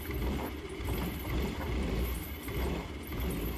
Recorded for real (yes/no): yes